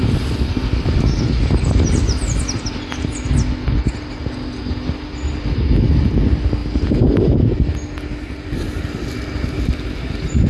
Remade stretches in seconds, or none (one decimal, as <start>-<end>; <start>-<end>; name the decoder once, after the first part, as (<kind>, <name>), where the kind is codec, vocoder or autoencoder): none